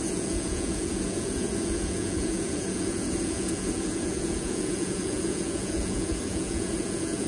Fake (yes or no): yes